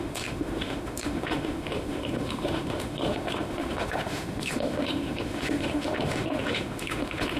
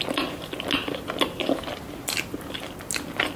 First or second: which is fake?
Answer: first